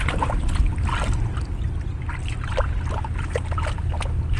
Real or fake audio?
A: real